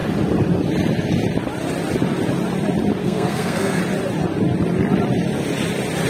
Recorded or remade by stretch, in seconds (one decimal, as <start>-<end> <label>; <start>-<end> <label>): 0.0-3.0 recorded; 3.0-3.8 remade; 3.8-6.1 recorded